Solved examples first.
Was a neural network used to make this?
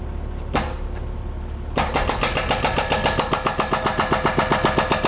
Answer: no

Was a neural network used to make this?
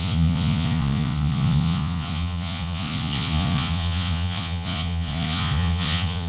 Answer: yes